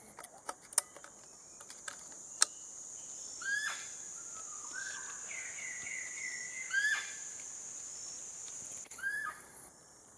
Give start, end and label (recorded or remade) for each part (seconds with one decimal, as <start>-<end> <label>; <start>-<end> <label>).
0.0-8.4 recorded; 8.4-10.2 remade